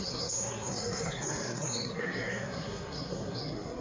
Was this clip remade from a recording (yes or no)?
yes